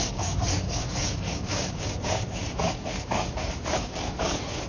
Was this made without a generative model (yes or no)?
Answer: no